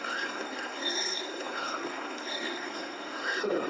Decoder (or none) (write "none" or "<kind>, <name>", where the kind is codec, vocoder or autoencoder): codec, SNAC